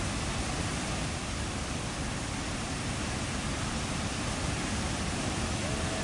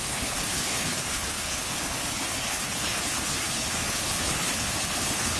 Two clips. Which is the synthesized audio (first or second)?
second